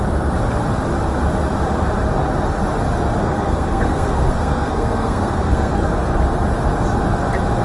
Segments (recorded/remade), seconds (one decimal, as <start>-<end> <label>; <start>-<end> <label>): 0.0-3.2 recorded; 3.2-5.9 remade; 5.9-7.6 recorded